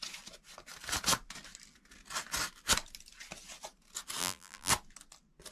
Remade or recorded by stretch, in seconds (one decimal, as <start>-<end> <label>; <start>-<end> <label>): 0.0-4.2 recorded; 4.2-4.7 remade; 4.7-5.5 recorded